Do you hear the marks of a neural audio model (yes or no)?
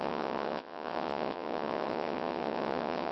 yes